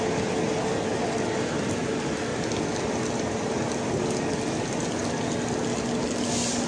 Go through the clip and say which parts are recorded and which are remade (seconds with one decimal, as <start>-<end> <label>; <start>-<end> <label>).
0.0-6.7 recorded